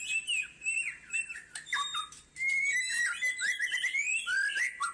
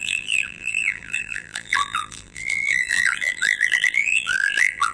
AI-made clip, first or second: second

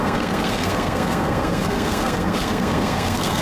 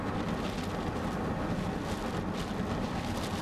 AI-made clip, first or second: first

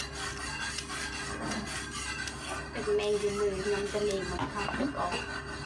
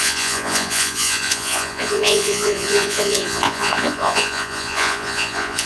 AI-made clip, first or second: second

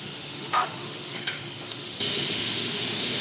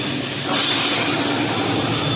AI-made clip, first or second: first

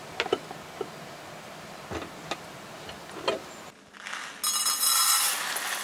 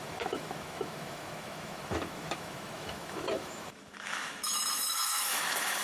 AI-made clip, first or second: second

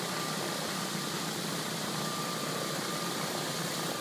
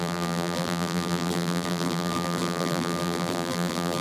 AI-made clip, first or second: second